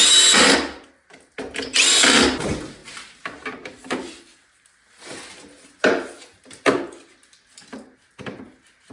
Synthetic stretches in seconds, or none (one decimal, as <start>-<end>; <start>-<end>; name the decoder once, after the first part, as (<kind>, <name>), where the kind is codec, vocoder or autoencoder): 2.8-4.4 (vocoder, BigVGAN v2)